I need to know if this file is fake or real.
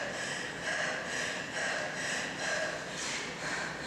fake